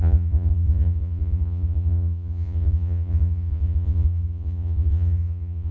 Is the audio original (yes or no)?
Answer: no